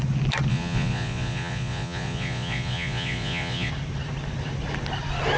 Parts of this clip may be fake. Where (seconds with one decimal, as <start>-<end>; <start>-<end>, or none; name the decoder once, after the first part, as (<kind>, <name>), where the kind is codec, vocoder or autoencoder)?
0.5-3.7 (vocoder, Vocos)